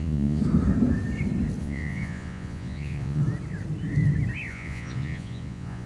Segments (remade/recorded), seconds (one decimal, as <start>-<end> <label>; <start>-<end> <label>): 0.0-0.4 remade; 0.4-1.6 recorded; 1.6-3.2 remade; 3.2-4.5 recorded; 4.5-5.9 remade